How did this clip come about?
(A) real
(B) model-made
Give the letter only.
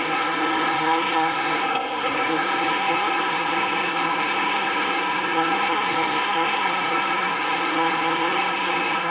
B